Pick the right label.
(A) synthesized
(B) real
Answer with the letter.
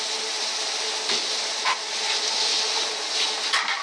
B